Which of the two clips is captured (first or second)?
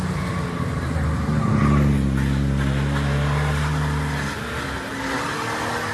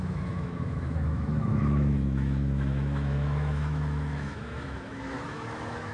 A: first